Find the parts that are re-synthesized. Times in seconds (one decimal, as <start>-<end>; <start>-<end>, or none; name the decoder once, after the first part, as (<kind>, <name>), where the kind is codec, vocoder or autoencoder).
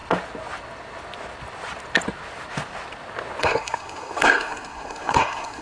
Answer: 3.4-5.6 (codec, SNAC)